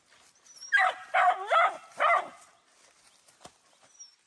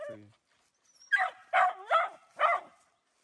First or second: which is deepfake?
second